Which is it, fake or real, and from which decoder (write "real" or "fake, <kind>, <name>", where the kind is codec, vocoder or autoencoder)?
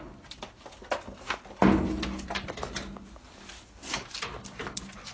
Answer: real